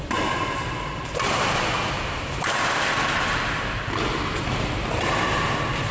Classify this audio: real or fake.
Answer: real